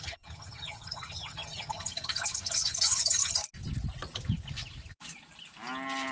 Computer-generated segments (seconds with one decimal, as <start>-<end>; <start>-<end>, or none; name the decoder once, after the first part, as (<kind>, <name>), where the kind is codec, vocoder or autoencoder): 0.0-3.4 (vocoder, HiFi-GAN)